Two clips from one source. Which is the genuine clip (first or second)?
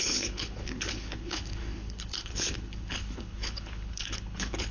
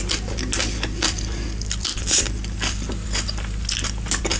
second